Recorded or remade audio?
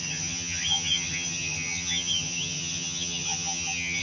remade